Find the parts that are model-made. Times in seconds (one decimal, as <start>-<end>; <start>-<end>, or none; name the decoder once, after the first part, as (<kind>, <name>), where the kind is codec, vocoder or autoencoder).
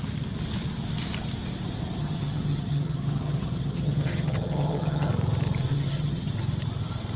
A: 2.0-5.1 (vocoder, HiFi-GAN); 5.7-6.3